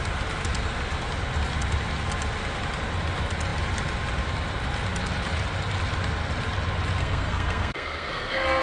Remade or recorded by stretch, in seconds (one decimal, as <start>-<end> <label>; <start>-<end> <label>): 0.0-7.0 recorded; 7.0-8.6 remade